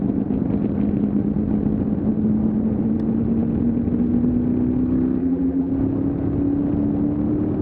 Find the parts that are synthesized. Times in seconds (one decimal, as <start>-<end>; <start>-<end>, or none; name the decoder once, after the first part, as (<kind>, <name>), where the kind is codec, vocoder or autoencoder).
5.2-5.7 (vocoder, BigVGAN v2)